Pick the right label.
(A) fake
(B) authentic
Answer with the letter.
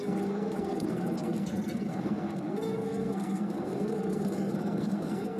A